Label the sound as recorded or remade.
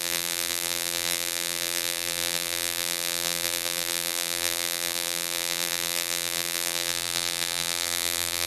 remade